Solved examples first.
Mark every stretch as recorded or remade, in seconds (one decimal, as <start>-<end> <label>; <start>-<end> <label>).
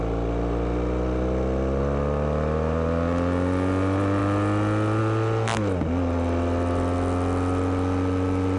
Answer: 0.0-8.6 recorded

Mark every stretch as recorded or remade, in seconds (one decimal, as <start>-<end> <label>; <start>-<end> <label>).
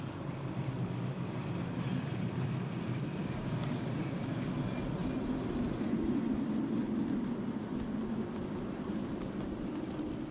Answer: 0.0-3.2 recorded; 3.2-4.5 remade; 4.5-10.3 recorded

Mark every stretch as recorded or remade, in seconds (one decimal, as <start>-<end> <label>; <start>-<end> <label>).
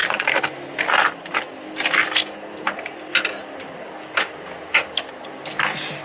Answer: 0.0-6.0 recorded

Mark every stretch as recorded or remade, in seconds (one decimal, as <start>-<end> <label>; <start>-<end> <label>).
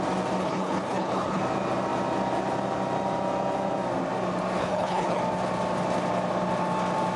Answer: 0.0-0.4 recorded; 0.4-1.4 remade; 1.4-4.6 recorded; 4.6-5.2 remade; 5.2-7.2 recorded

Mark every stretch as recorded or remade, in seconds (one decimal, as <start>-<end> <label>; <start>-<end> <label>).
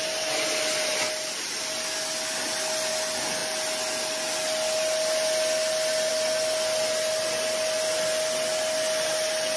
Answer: 0.0-9.6 recorded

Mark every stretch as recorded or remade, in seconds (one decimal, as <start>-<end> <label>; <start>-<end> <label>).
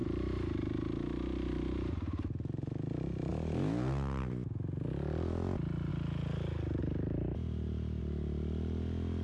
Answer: 0.0-3.3 remade; 3.3-6.8 recorded; 6.8-8.0 remade; 8.0-9.2 recorded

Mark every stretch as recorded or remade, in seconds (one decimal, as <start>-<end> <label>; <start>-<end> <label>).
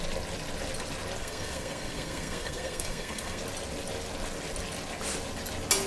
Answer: 0.0-1.2 recorded; 1.2-3.4 remade; 3.4-5.9 recorded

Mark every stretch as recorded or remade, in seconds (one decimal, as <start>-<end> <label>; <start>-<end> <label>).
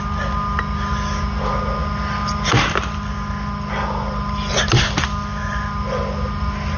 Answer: 0.0-6.8 recorded